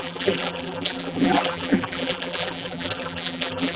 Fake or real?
fake